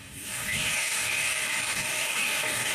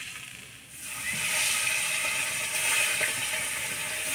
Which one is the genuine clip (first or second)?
second